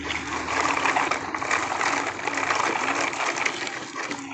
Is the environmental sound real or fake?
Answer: real